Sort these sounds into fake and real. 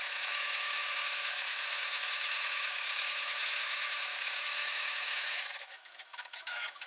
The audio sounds fake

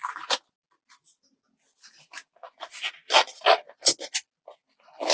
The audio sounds real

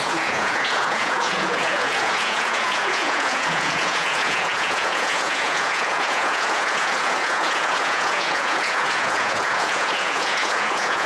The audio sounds fake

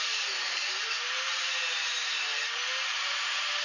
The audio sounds fake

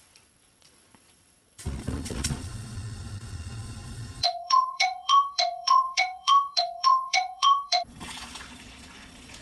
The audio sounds fake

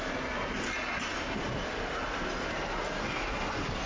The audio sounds real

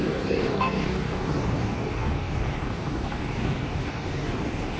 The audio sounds fake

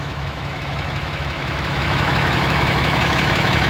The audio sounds fake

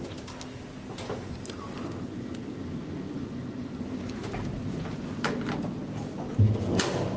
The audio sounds real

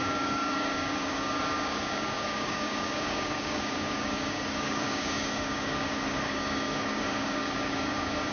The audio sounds fake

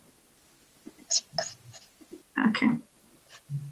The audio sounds real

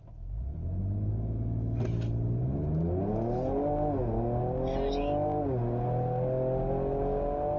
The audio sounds real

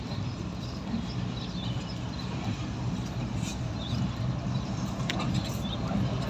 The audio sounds real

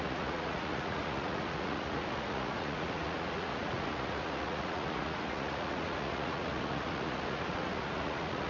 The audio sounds fake